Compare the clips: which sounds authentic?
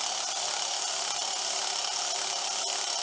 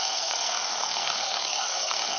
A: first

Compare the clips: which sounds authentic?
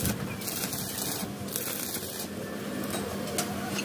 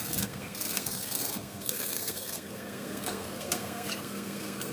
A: first